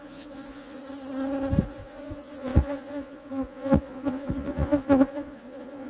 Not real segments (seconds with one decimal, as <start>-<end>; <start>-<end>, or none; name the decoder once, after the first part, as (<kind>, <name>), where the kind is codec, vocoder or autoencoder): 0.0-0.8 (vocoder, Vocos); 1.6-5.9